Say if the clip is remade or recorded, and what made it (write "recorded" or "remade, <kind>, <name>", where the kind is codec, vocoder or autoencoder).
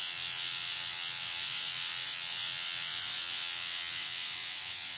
remade, vocoder, WaveNeXt